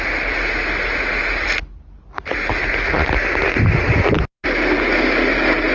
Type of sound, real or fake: real